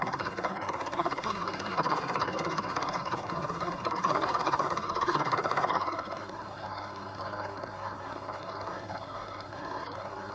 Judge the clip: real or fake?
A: fake